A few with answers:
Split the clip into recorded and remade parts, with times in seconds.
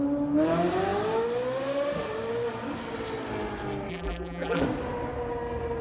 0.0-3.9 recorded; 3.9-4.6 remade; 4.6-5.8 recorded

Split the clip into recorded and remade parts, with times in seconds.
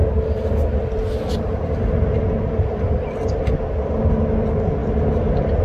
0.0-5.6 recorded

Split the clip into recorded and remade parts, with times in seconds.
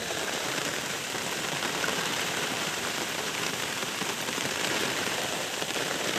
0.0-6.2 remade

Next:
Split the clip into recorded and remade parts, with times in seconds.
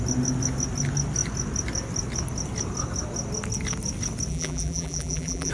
0.0-4.3 recorded; 4.3-5.5 remade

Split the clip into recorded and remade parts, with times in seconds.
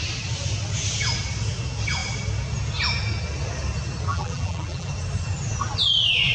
0.0-4.1 recorded; 4.1-4.9 remade; 4.9-6.3 recorded